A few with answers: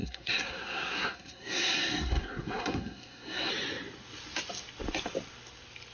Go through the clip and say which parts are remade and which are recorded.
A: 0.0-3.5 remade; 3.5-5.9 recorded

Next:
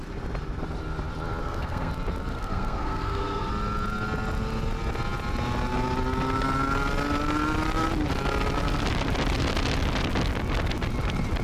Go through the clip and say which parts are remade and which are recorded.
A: 0.0-1.4 recorded; 1.4-1.9 remade; 1.9-2.3 recorded; 2.3-3.5 remade; 3.5-11.4 recorded

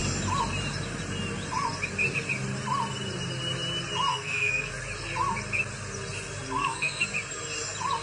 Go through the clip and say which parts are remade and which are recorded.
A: 0.0-4.1 recorded; 4.1-4.7 remade; 4.7-6.6 recorded; 6.6-7.1 remade; 7.1-8.0 recorded

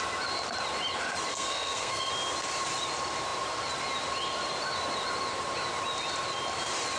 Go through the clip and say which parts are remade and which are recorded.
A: 0.0-1.3 recorded; 1.3-2.1 remade; 2.1-7.0 recorded

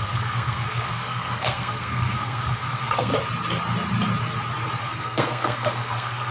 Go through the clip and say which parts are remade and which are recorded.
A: 0.0-3.1 remade; 3.1-4.8 recorded; 4.8-6.3 remade